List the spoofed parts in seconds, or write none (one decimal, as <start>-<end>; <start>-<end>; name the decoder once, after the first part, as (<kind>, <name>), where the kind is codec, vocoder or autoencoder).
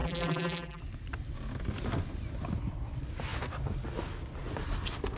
0.0-0.8 (vocoder, BigVGAN v2)